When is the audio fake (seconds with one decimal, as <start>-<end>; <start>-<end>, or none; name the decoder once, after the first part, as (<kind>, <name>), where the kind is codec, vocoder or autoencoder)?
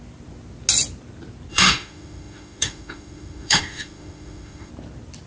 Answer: 1.5-4.7 (autoencoder, DAC-VAE)